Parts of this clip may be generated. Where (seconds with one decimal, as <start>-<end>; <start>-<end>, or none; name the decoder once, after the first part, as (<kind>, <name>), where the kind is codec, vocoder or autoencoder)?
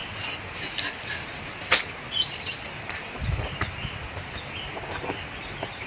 none